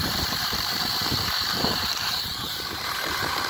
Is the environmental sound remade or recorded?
remade